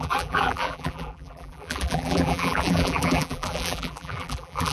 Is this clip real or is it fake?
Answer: fake